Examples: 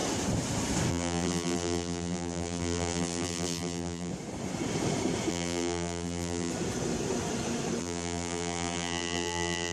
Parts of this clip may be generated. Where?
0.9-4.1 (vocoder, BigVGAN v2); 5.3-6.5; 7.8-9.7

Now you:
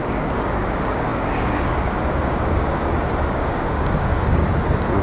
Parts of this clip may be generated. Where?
0.0-4.4 (codec, DAC)

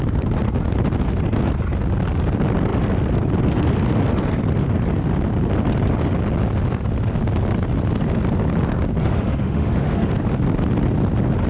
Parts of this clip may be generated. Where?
9.0-10.1 (autoencoder, DAC-VAE)

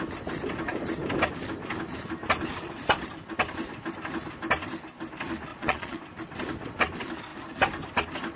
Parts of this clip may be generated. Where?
5.5-6.0 (vocoder, Vocos)

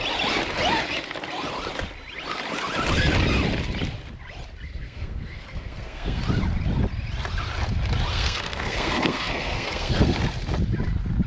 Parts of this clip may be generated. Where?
4.8-6.2 (codec, SNAC); 8.1-10.2